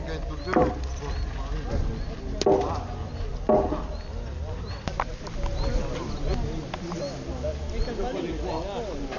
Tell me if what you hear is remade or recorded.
recorded